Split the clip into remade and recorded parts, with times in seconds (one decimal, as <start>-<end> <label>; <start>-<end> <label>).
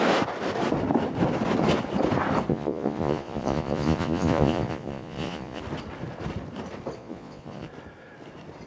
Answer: 0.0-2.5 recorded; 2.5-5.6 remade; 5.6-7.0 recorded; 7.0-7.7 remade; 7.7-8.7 recorded